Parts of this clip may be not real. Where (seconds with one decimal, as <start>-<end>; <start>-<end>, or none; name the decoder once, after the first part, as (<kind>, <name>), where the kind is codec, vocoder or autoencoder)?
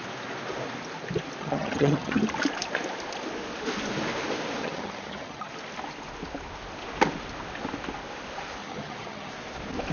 1.4-2.2 (vocoder, HiFi-GAN); 4.6-5.5; 8.6-9.3